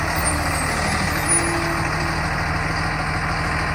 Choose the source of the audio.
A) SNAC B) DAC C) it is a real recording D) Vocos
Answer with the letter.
C